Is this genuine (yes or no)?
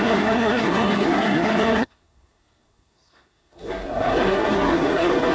no